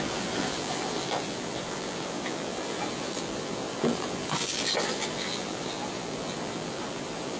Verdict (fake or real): fake